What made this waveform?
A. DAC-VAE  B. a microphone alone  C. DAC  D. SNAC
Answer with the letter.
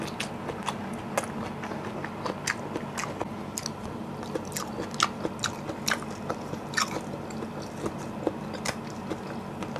B